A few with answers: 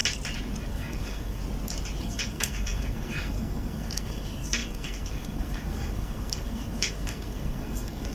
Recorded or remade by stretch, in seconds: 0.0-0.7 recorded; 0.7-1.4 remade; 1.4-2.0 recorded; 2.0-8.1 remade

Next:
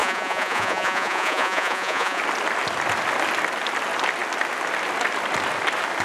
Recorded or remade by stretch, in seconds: 0.0-2.2 remade; 2.2-6.0 recorded